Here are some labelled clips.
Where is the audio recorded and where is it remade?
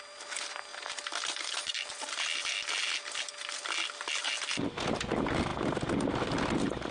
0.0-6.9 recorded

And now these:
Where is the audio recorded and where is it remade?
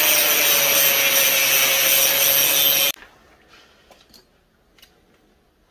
0.0-5.7 recorded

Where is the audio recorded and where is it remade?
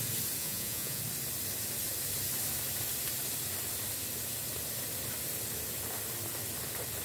0.0-0.4 recorded; 0.4-1.0 remade; 1.0-7.0 recorded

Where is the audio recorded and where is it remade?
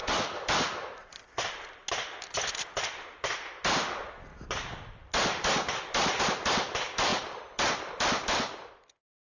0.0-9.3 recorded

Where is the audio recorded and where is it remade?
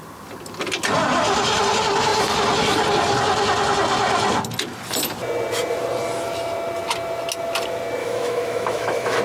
0.0-8.0 recorded; 8.0-9.2 remade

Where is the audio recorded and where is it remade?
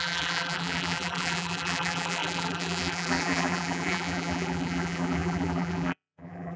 0.0-6.6 remade